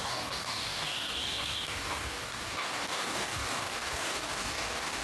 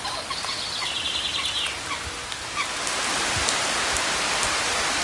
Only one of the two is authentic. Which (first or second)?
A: second